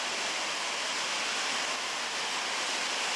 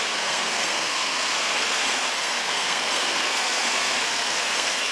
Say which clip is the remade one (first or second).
second